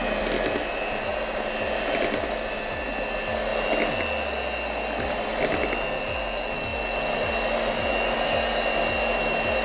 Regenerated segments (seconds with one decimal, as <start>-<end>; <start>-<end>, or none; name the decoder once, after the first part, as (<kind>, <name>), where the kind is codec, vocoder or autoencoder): none